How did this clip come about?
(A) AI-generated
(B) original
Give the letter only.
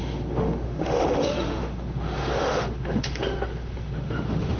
A